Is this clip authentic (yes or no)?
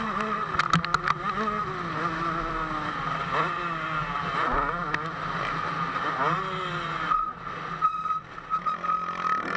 yes